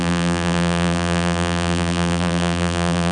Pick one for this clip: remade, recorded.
remade